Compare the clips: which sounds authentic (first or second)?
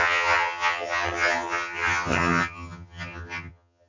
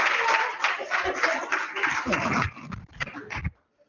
second